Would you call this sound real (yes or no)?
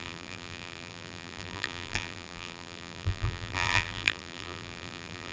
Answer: no